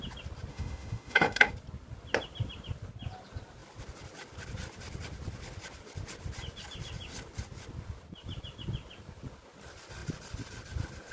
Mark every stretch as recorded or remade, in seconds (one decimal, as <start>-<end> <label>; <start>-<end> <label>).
0.0-0.5 recorded; 0.5-1.5 remade; 1.5-11.1 recorded